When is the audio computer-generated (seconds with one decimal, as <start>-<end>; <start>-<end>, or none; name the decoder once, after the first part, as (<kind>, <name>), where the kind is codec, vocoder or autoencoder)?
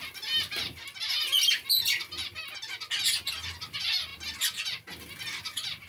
none